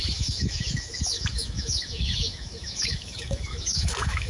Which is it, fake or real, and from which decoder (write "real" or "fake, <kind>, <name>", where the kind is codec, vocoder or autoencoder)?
fake, autoencoder, DAC-VAE